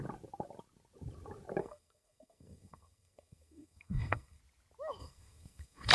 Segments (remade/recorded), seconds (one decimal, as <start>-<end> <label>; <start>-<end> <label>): 0.0-1.6 recorded; 1.6-4.4 remade; 4.4-5.0 recorded; 5.0-5.9 remade